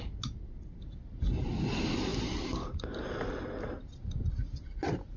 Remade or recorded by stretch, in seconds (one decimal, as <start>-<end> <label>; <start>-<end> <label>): 0.0-5.2 recorded